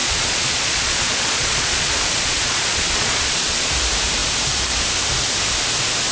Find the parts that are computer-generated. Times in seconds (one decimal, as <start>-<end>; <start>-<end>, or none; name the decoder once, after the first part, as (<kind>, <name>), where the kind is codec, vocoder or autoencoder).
0.0-3.7 (vocoder, Vocos)